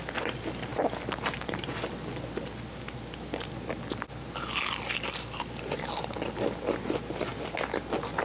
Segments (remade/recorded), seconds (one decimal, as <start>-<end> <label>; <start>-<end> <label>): 0.0-8.2 recorded